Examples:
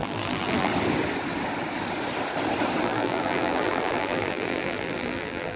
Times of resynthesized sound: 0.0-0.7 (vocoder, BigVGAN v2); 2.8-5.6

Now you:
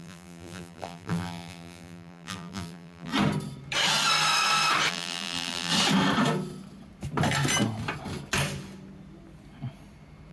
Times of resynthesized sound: 0.0-3.1 (vocoder, BigVGAN v2); 4.9-5.7

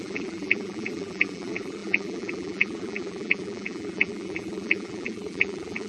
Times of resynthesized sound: 0.0-5.9 (vocoder, BigVGAN v2)

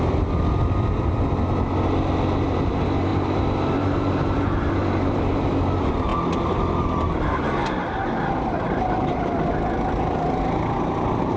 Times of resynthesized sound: 3.1-5.2 (vocoder, BigVGAN v2)

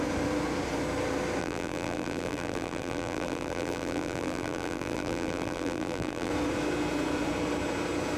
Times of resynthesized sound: 1.4-6.3 (vocoder, BigVGAN v2)

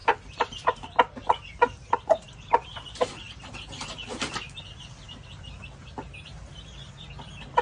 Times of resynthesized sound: 0.0-4.6 (vocoder, BigVGAN v2)

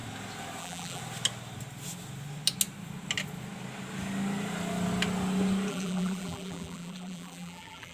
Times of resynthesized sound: 0.6-1.0 (vocoder, BigVGAN v2); 5.7-7.9

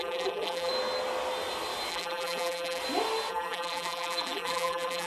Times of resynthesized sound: 0.0-0.7 (vocoder, BigVGAN v2); 1.9-2.8; 3.3-5.1